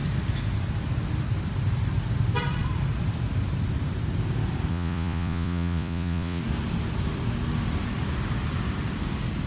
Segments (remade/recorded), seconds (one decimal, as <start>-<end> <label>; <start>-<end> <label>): 0.0-4.7 recorded; 4.7-6.4 remade; 6.4-9.5 recorded